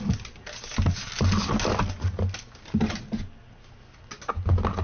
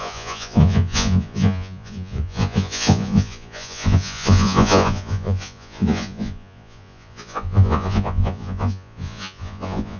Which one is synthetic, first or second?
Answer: second